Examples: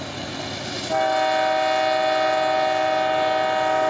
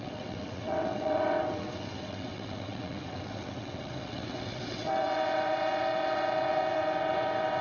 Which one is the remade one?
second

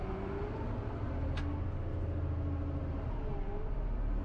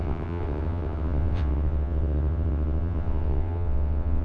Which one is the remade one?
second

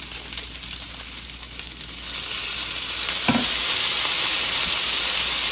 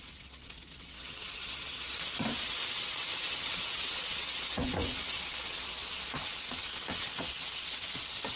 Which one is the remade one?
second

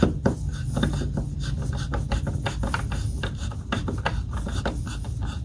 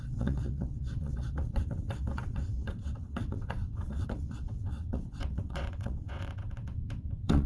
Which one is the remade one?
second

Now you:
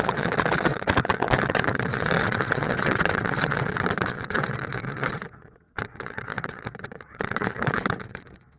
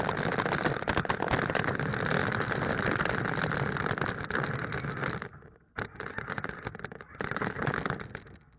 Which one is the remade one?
first